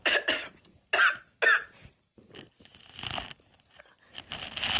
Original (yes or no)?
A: yes